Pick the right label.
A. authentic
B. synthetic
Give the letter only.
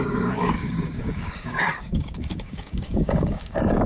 B